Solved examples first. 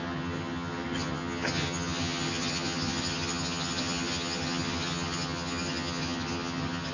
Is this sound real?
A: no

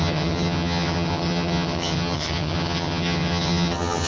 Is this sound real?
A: no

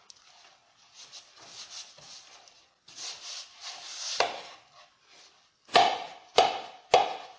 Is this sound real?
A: yes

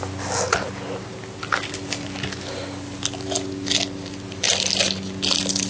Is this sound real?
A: yes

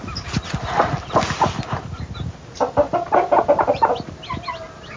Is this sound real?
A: yes